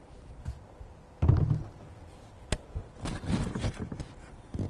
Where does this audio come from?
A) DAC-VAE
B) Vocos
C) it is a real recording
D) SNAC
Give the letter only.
C